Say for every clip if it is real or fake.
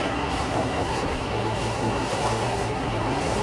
fake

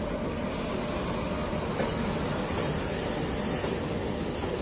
real